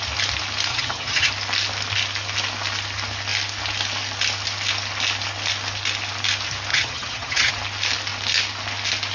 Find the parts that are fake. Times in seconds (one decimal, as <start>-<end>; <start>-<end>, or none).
0.7-1.3; 6.7-7.5